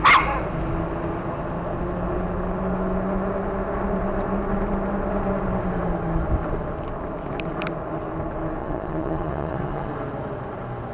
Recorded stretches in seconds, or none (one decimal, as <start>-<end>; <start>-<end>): 0.0-8.6; 9.9-10.9